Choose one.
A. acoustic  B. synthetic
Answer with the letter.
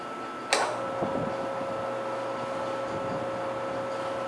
A